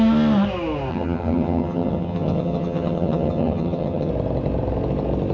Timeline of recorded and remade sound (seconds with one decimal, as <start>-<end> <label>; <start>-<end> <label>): 0.0-0.9 recorded; 0.9-4.1 remade; 4.1-5.3 recorded